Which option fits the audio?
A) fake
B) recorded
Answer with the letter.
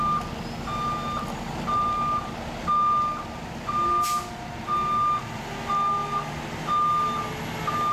B